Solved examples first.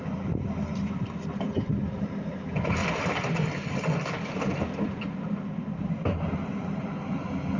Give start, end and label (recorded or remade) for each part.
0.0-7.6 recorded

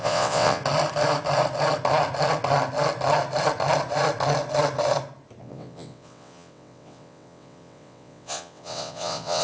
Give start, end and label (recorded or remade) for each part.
0.0-0.6 remade; 0.6-5.4 recorded; 5.4-9.4 remade

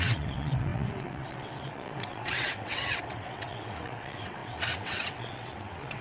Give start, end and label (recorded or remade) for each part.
0.0-6.0 remade